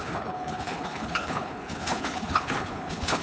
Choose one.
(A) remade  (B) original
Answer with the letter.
A